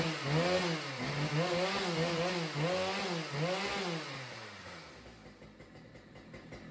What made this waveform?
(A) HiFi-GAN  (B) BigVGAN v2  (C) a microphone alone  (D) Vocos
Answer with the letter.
C